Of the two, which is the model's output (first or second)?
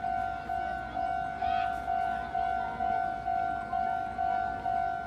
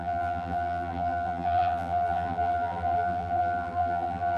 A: second